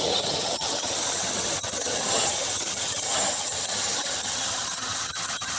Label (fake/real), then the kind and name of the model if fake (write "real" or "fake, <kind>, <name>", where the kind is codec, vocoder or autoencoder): fake, vocoder, HiFi-GAN